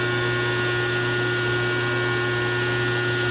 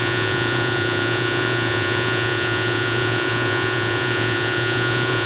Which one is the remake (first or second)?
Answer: second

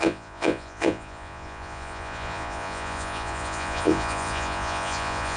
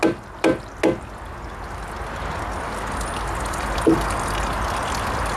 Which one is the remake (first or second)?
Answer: first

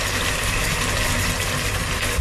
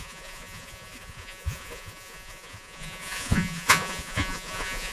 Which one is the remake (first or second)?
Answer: second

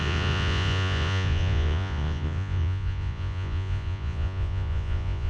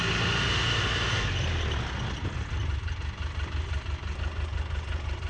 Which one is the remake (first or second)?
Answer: first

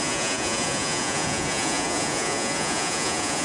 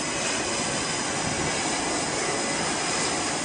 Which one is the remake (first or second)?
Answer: first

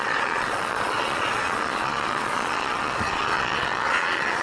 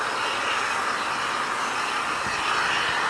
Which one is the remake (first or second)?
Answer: first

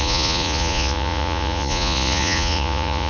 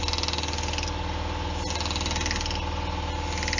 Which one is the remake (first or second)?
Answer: first